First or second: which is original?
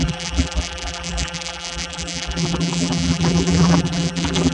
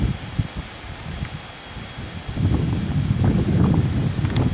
second